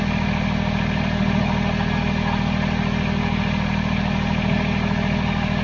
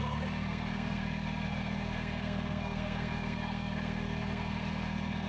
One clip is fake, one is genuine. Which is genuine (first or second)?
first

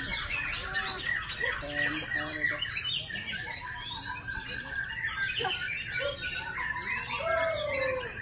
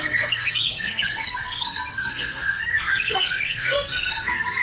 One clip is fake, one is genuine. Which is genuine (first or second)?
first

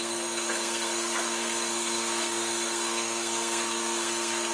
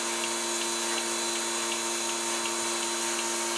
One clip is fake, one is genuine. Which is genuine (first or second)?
second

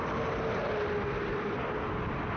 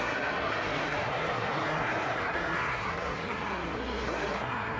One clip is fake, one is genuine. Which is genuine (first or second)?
first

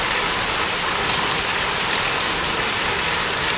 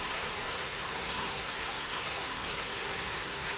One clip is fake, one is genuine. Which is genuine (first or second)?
first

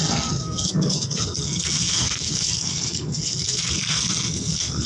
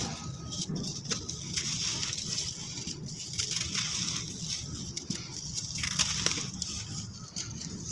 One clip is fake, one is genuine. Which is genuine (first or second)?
second